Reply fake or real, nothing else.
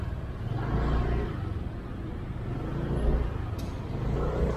real